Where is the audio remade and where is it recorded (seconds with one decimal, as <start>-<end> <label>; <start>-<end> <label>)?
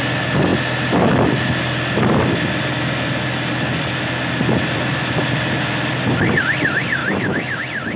0.0-7.0 recorded; 7.0-7.6 remade; 7.6-8.0 recorded